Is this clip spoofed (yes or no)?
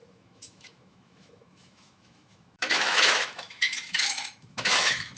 yes